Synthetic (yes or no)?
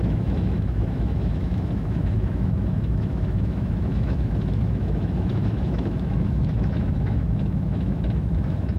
yes